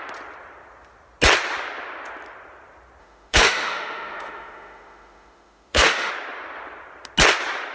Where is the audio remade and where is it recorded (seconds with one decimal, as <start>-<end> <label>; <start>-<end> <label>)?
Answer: 0.0-3.0 recorded; 3.0-6.1 remade; 6.1-7.7 recorded